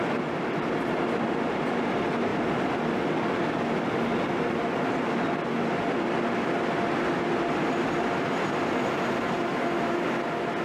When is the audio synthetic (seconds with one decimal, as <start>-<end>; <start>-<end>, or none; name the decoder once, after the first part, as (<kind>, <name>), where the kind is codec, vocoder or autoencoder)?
none